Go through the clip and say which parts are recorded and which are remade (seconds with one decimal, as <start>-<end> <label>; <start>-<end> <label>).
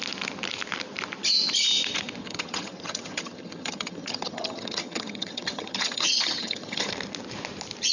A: 0.0-2.2 recorded; 2.2-6.9 remade; 6.9-7.9 recorded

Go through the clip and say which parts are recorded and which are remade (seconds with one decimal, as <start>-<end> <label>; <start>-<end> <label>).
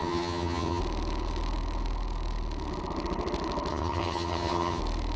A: 0.0-0.8 remade; 0.8-3.7 recorded; 3.7-4.8 remade; 4.8-5.2 recorded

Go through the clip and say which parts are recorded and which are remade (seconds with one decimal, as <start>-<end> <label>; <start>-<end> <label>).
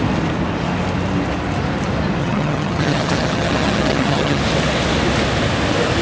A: 0.0-2.2 recorded; 2.2-4.4 remade; 4.4-6.0 recorded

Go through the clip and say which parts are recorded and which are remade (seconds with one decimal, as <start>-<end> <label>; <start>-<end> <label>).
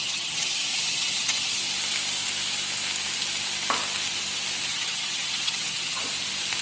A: 0.0-1.6 remade; 1.6-4.7 recorded; 4.7-6.0 remade; 6.0-6.6 recorded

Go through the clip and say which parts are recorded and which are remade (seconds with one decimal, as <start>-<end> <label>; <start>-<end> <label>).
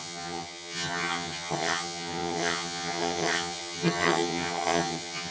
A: 0.0-5.3 remade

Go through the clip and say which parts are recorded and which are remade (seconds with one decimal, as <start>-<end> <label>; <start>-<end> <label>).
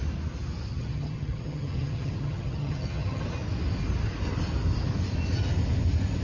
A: 0.0-0.7 recorded; 0.7-3.2 remade; 3.2-6.2 recorded